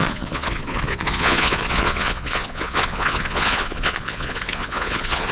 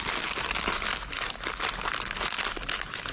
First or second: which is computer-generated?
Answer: first